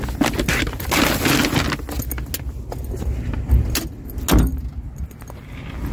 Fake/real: real